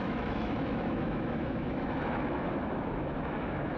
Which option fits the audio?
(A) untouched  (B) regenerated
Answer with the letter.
B